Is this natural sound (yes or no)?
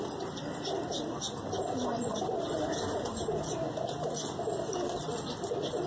yes